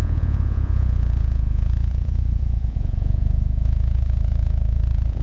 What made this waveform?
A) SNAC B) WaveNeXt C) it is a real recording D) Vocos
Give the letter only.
D